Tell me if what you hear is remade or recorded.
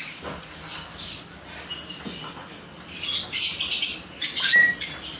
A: recorded